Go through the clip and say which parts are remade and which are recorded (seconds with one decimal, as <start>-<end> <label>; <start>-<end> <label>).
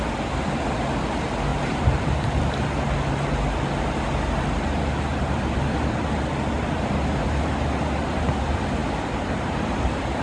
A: 0.0-1.5 recorded; 1.5-2.1 remade; 2.1-5.1 recorded; 5.1-5.7 remade; 5.7-8.8 recorded; 8.8-10.2 remade